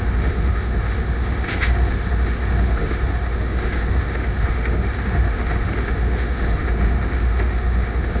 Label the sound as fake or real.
fake